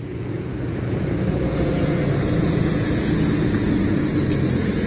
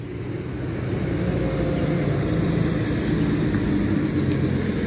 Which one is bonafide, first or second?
second